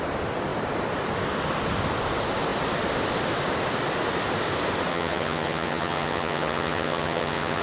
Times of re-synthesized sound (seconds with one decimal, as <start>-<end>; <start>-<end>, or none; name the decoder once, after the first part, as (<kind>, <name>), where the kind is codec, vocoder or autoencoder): 4.9-7.6 (vocoder, HiFi-GAN)